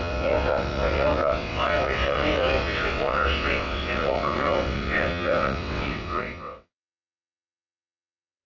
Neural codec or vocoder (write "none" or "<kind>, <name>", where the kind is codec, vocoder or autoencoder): vocoder, WaveNeXt